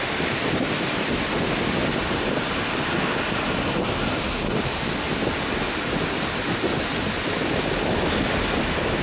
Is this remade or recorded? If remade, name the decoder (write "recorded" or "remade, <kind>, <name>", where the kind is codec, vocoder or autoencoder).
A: recorded